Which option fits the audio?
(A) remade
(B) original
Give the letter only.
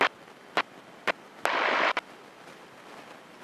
B